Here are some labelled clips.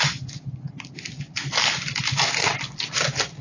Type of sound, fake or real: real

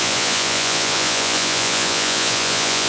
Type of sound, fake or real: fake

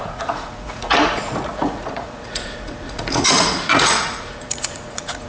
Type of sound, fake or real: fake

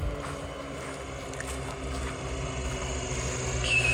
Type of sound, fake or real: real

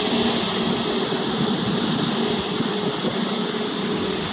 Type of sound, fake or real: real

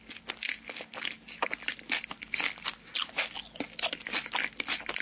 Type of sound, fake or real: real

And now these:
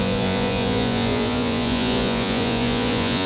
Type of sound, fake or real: fake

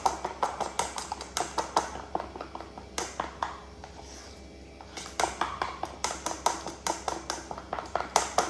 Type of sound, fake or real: real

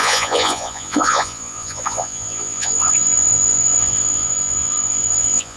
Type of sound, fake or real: fake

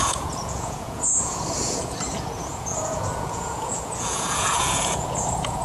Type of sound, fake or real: fake